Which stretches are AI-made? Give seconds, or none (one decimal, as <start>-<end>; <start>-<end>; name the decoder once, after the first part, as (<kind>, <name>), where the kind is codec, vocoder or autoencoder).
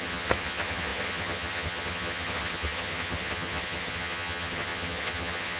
0.0-5.6 (vocoder, HiFi-GAN)